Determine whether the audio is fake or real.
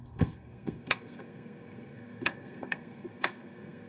fake